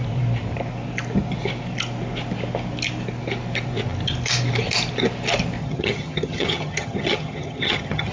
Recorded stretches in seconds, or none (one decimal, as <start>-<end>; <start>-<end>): 0.0-5.6